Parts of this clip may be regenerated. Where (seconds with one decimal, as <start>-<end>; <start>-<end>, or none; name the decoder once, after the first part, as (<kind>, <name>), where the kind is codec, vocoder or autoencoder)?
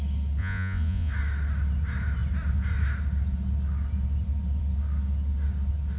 0.4-1.1 (vocoder, Vocos)